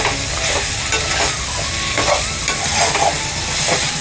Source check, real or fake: real